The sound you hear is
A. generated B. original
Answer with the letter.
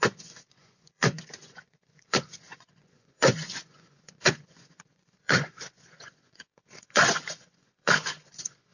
A